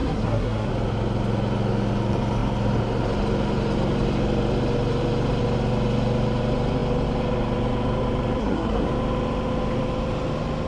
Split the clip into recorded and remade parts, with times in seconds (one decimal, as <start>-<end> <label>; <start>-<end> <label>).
0.0-0.7 remade; 0.7-8.4 recorded; 8.4-8.9 remade; 8.9-10.7 recorded